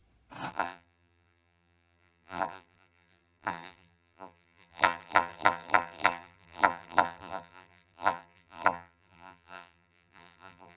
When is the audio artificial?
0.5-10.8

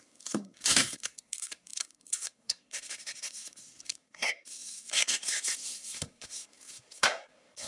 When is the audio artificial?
0.0-7.7

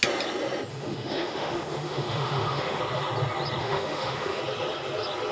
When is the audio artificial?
0.7-2.8; 3.6-4.4

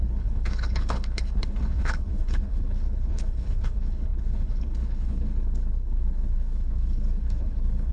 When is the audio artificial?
0.0-7.9

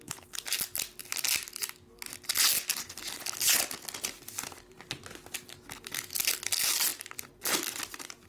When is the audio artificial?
none

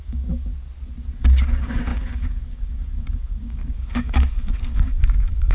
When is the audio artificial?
0.0-0.5; 1.2-5.5

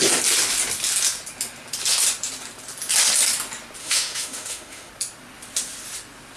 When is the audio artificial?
3.8-4.9

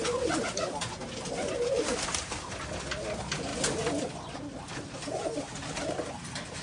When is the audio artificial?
none